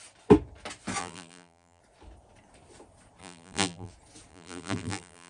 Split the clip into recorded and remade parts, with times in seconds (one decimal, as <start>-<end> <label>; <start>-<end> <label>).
0.0-1.0 recorded; 1.0-1.8 remade; 1.8-3.2 recorded; 3.2-3.9 remade; 3.9-4.3 recorded; 4.3-5.3 remade